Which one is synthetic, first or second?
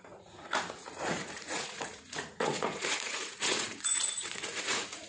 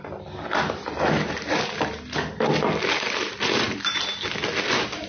first